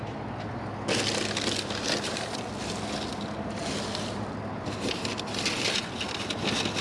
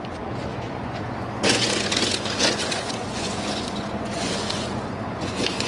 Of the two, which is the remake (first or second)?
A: second